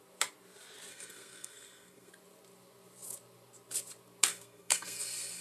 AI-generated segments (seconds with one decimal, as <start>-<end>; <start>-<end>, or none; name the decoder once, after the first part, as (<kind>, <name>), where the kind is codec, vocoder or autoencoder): 0.9-2.1 (codec, SNAC); 4.3-5.4